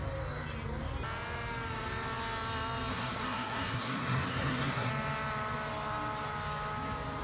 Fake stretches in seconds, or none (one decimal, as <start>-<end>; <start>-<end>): 2.9-4.9